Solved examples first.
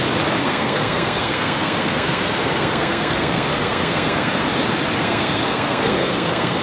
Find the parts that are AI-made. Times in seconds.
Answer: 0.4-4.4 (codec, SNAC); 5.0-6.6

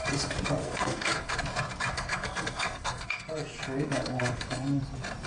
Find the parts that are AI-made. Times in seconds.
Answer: 0.6-1.5 (codec, SNAC); 1.9-4.8

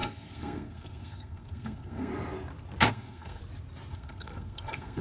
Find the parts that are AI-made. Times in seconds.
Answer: 0.0-2.1 (codec, SNAC); 2.9-3.4; 3.9-5.0